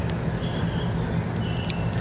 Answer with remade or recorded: recorded